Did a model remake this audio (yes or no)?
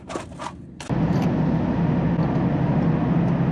no